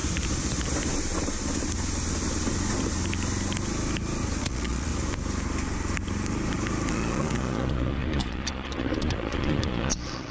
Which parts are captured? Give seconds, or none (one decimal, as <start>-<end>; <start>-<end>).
0.0-4.4; 4.9-6.9